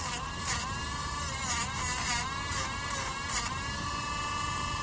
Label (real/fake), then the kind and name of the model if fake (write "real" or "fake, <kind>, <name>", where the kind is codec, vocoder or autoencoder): real